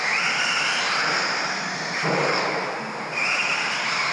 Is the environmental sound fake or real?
real